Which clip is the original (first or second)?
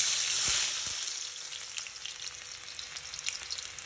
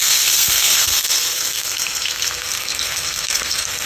first